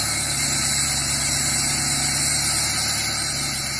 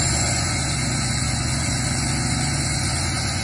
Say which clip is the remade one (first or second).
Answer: second